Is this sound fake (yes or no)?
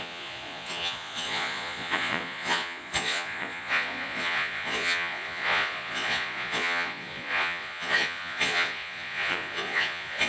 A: yes